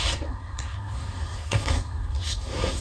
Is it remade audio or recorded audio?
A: remade